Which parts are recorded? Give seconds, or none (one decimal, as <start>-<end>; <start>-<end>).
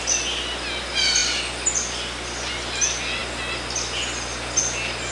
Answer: 0.0-5.1